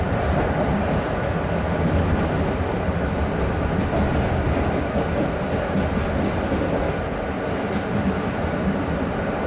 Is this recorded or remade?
recorded